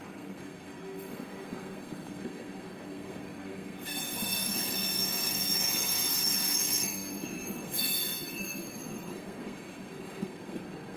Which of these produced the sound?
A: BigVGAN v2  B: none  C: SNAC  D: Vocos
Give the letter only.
C